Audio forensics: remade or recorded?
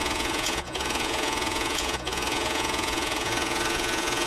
remade